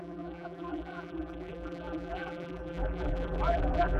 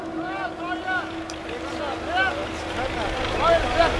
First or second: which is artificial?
first